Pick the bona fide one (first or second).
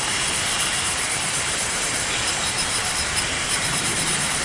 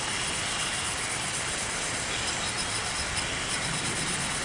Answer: second